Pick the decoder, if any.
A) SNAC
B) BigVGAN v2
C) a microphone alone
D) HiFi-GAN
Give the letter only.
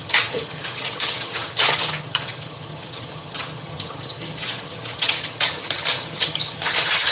D